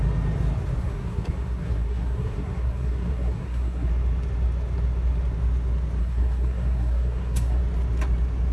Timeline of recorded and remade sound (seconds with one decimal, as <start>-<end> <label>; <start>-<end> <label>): 0.0-0.8 recorded; 0.8-3.9 remade; 3.9-6.0 recorded; 6.0-7.6 remade; 7.6-8.5 recorded

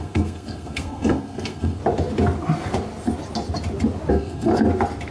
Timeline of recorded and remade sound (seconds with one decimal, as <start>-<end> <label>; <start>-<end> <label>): 0.0-1.8 remade; 1.8-4.1 recorded; 4.1-4.5 remade; 4.5-5.1 recorded